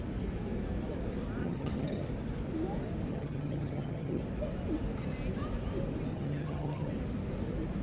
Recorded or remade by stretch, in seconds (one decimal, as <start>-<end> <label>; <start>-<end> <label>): 0.0-1.4 recorded; 1.4-2.1 remade; 2.1-3.1 recorded; 3.1-4.2 remade; 4.2-6.1 recorded; 6.1-6.9 remade; 6.9-7.8 recorded